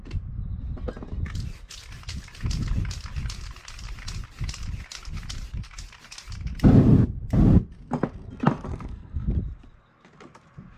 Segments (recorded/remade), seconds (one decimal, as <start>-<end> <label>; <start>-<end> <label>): 0.0-8.7 recorded; 8.7-9.3 remade; 9.3-10.8 recorded